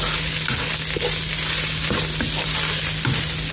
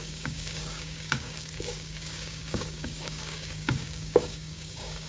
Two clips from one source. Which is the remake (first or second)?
second